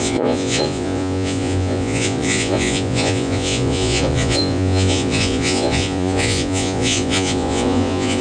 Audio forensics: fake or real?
fake